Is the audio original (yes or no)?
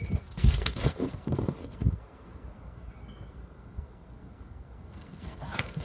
no